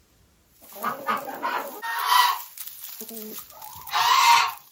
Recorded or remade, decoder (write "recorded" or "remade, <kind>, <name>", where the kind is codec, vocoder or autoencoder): recorded